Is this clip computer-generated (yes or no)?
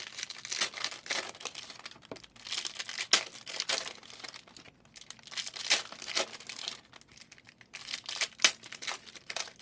no